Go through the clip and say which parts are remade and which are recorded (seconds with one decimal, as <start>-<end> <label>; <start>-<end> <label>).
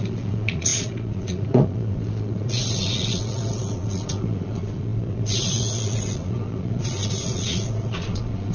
0.0-8.5 remade